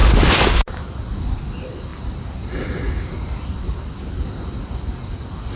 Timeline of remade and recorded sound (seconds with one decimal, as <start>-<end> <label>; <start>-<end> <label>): 0.0-5.6 recorded